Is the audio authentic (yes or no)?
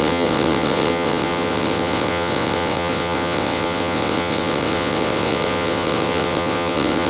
no